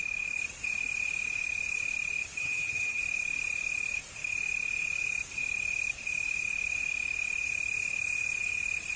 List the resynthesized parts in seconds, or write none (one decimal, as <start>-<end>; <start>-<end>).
2.4-3.0